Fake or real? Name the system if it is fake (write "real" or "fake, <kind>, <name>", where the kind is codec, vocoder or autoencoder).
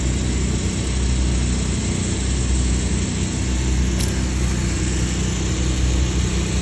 real